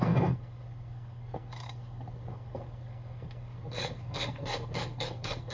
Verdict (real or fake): fake